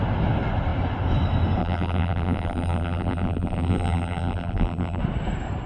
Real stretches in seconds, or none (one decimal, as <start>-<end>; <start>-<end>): 0.0-1.6; 5.0-5.7